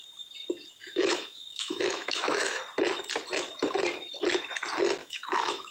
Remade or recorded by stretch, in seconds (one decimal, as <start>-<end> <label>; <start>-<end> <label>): 0.0-0.8 recorded; 0.8-2.6 remade; 2.6-5.0 recorded; 5.0-5.7 remade